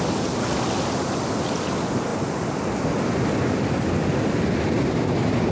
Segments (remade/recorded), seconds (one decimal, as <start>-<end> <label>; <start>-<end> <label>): 0.0-5.5 recorded